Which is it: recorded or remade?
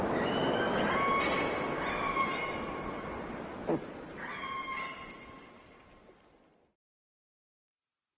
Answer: recorded